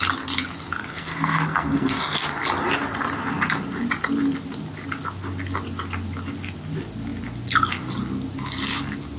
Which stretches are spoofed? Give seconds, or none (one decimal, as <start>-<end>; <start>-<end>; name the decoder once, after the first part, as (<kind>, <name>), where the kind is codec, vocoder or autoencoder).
0.8-2.2 (codec, SNAC)